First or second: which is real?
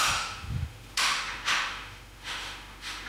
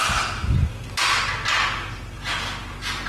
second